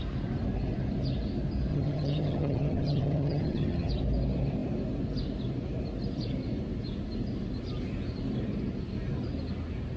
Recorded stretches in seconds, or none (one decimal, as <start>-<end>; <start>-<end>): 0.0-1.7; 3.9-10.0